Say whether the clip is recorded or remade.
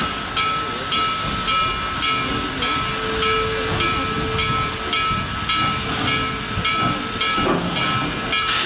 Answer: recorded